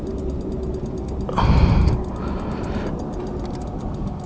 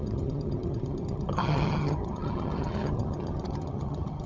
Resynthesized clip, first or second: second